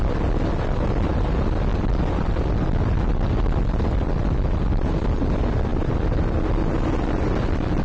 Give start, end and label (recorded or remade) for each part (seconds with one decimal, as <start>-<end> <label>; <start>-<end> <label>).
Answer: 0.0-7.8 recorded